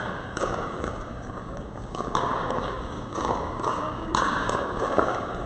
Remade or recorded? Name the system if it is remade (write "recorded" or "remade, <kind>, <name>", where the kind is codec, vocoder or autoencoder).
remade, codec, DAC